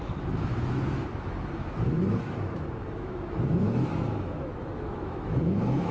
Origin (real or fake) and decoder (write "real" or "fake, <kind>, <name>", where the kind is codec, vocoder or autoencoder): fake, autoencoder, DAC-VAE